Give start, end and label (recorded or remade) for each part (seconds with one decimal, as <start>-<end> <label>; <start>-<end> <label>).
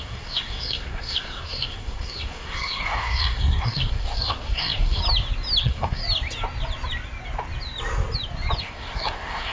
0.0-5.0 remade; 5.0-5.6 recorded; 5.6-6.0 remade; 6.0-8.6 recorded; 8.6-9.5 remade